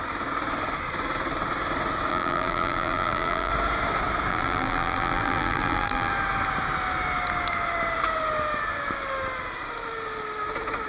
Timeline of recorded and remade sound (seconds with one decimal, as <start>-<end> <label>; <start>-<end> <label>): 0.0-2.1 recorded; 2.1-3.5 remade; 3.5-4.3 recorded; 4.3-6.1 remade; 6.1-10.9 recorded